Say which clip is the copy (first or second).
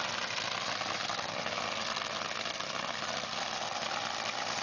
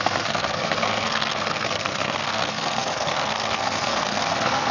second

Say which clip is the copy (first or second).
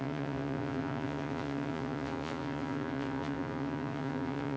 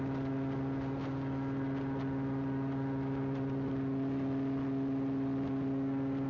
first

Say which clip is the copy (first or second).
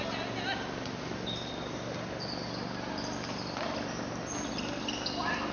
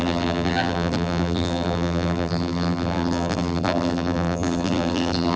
second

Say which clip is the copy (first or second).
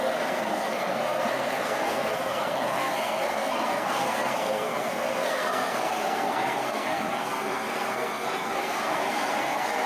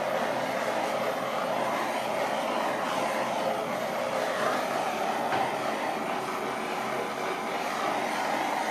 first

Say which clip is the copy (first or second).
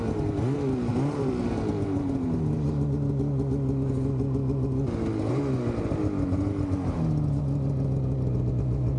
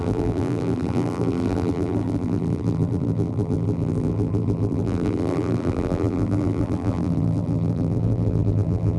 second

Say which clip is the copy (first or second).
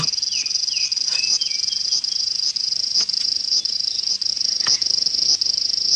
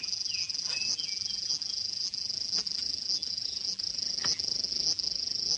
second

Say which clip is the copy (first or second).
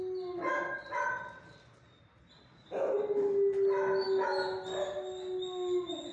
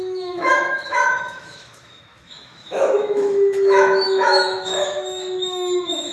second